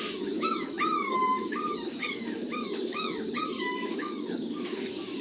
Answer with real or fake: fake